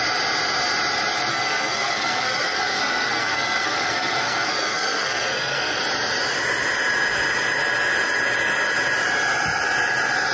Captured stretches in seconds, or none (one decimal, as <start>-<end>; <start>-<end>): 0.0-1.3; 5.8-10.3

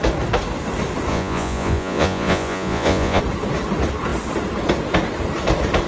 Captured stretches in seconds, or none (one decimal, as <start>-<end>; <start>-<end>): 0.0-1.1; 3.2-5.9

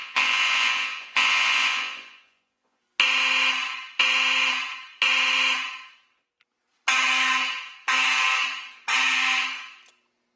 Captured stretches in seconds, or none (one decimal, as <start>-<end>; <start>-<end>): 2.8-10.4